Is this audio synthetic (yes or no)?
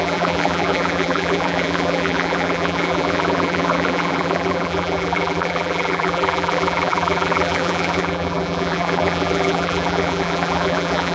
yes